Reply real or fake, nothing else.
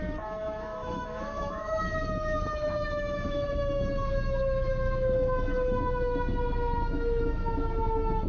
fake